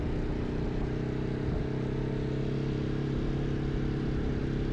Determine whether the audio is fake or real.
real